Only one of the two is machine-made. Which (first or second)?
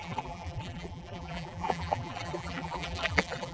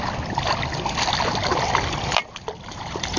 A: first